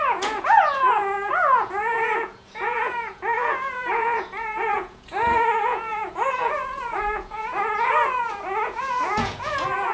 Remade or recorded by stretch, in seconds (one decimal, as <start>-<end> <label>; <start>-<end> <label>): 0.0-9.9 remade